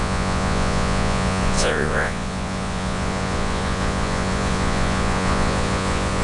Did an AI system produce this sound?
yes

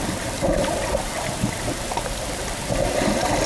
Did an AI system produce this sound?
no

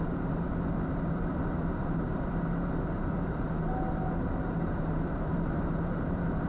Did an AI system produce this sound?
yes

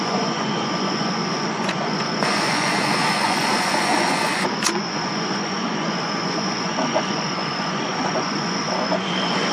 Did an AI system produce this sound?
yes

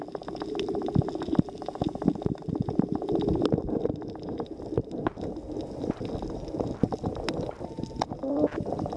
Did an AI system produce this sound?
no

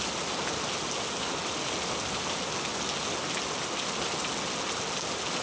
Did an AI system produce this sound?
no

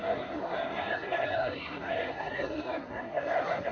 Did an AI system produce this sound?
yes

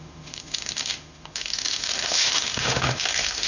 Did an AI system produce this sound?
yes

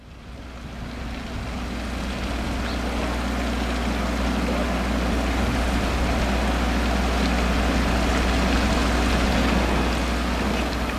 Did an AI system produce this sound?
no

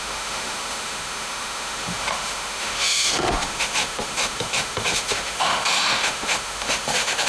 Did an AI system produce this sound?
yes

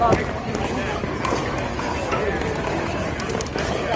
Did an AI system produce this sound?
no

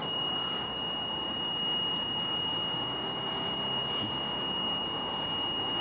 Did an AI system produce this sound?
no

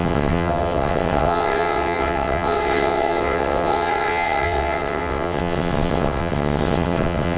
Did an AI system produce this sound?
yes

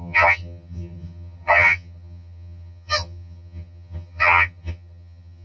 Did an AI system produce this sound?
yes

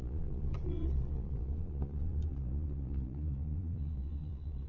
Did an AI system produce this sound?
yes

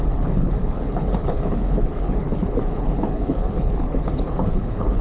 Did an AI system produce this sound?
yes